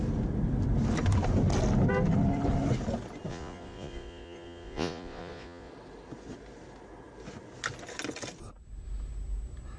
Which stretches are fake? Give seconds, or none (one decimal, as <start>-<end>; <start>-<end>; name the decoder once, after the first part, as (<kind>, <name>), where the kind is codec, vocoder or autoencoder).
3.3-5.7 (vocoder, Vocos)